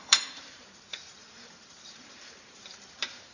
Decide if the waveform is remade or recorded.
remade